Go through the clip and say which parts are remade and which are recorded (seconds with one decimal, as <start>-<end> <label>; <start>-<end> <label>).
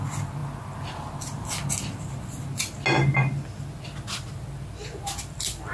0.0-5.7 recorded